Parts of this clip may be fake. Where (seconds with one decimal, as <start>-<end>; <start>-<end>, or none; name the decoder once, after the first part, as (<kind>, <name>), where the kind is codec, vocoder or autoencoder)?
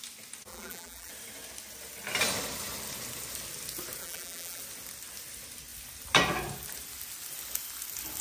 0.5-1.1 (vocoder, BigVGAN v2); 4.0-4.6